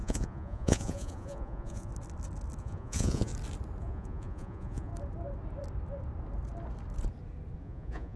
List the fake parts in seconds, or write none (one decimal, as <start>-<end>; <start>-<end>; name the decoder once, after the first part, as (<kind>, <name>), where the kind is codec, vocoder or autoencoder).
0.0-1.9 (vocoder, Vocos); 2.6-3.3; 3.8-4.9; 7.6-8.2